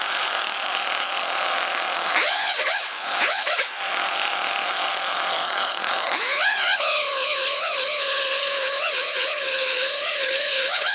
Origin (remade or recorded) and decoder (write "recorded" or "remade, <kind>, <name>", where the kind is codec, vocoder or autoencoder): remade, codec, HILCodec